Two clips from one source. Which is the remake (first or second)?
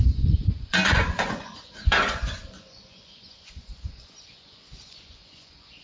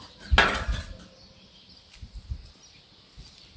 first